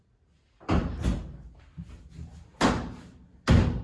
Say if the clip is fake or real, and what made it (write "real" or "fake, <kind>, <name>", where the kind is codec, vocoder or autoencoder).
real